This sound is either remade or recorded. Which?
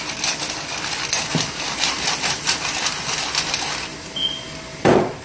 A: recorded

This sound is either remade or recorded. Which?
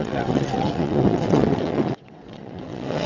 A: remade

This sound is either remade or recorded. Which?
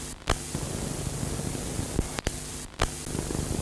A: recorded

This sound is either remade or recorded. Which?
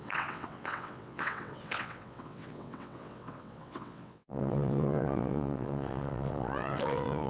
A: remade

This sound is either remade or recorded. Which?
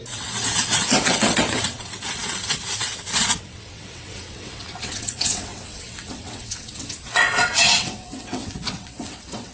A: remade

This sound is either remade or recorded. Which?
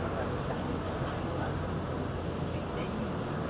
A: recorded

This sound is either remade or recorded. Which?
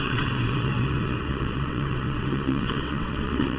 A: remade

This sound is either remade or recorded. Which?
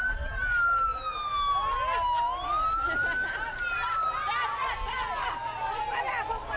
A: recorded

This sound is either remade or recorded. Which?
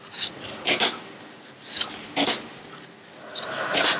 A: recorded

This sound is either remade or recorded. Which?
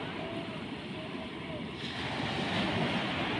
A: recorded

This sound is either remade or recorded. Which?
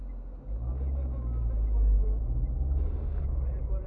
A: recorded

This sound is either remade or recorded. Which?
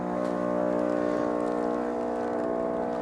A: recorded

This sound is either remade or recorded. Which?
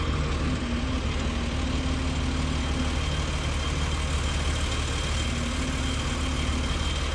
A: recorded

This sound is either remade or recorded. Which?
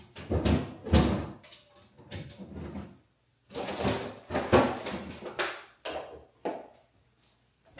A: recorded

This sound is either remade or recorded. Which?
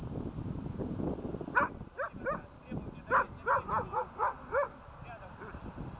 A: recorded